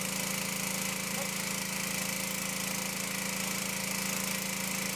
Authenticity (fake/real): real